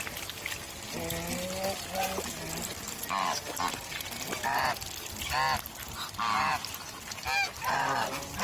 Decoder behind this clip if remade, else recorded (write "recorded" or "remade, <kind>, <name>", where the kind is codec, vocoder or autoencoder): recorded